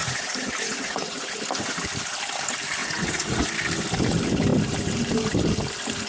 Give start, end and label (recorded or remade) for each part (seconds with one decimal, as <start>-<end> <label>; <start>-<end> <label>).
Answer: 0.0-1.4 remade; 1.4-2.8 recorded; 2.8-3.5 remade; 3.5-6.1 recorded